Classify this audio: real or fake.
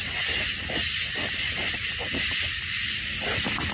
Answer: real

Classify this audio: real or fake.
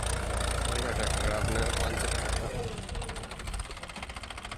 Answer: real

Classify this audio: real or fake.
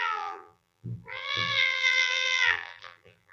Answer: fake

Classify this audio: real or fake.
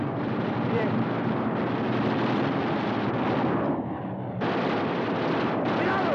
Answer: fake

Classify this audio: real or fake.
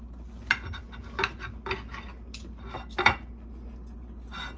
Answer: real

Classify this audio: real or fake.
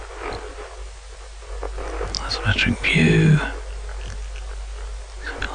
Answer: real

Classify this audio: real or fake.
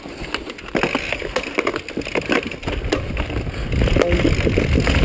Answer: real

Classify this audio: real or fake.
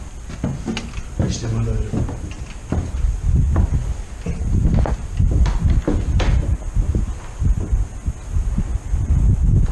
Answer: real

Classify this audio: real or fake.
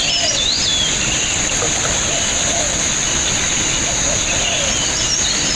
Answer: real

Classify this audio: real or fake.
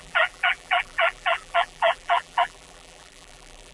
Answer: fake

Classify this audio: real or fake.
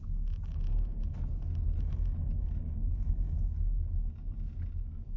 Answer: real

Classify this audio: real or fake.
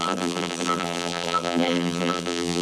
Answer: fake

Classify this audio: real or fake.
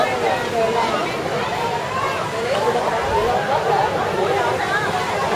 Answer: real